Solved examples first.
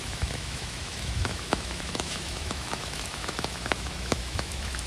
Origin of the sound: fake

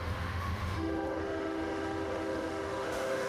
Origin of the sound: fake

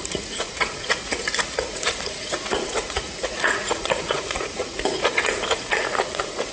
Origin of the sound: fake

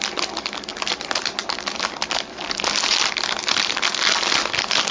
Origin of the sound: real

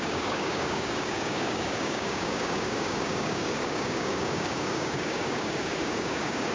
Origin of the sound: fake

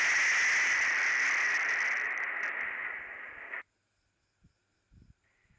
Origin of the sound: real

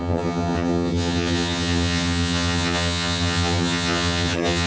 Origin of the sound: fake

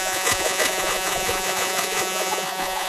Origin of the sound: fake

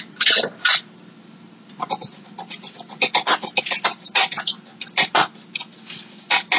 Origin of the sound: real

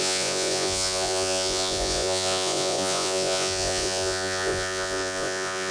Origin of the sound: fake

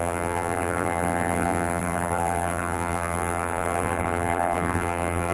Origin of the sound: fake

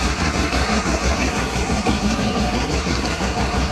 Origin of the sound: fake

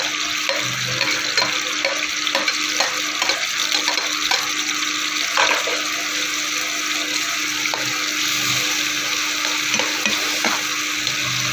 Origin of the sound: real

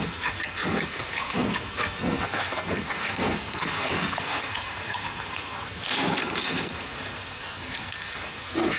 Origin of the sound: fake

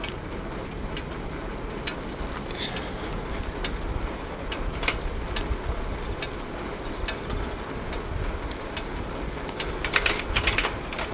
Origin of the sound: real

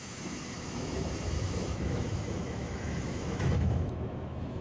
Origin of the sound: fake